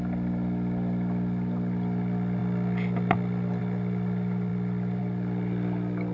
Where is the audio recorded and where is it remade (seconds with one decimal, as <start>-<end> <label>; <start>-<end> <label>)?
0.0-6.1 recorded